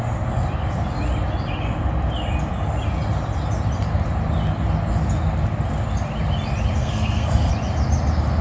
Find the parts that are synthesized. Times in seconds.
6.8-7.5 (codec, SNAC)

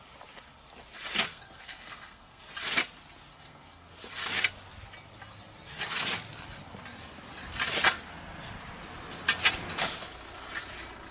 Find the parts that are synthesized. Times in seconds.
1.3-2.4 (codec, SNAC); 3.3-3.8